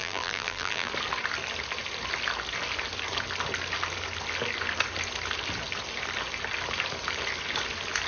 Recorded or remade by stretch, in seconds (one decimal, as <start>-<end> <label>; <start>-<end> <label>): 0.0-0.9 remade; 0.9-8.1 recorded

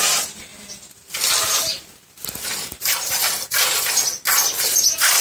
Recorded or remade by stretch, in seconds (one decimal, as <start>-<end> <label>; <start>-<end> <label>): 0.0-0.5 remade; 0.5-2.7 recorded; 2.7-3.2 remade; 3.2-4.4 recorded; 4.4-5.2 remade

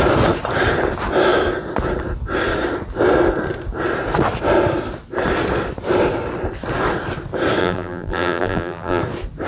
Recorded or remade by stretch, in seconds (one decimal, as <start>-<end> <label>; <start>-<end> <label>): 0.0-7.6 recorded; 7.6-9.0 remade; 9.0-9.5 recorded